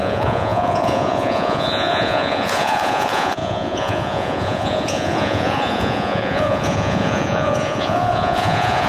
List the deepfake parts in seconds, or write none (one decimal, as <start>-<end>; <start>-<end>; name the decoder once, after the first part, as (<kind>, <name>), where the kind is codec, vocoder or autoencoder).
0.0-8.9 (vocoder, Vocos)